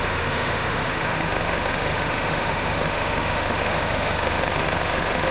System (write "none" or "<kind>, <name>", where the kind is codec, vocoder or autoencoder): autoencoder, DAC-VAE